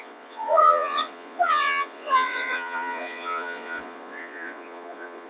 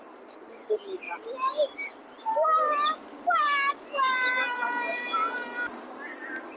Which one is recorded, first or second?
second